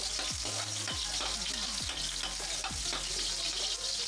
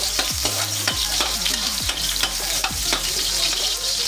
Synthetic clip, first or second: second